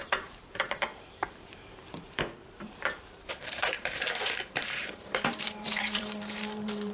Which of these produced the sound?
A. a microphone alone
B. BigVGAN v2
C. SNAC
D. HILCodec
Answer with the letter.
B